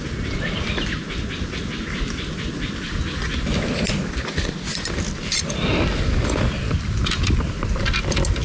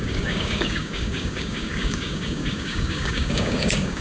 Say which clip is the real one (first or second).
first